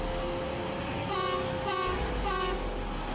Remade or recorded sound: recorded